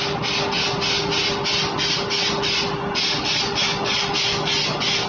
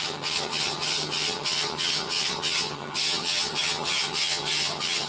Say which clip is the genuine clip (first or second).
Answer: first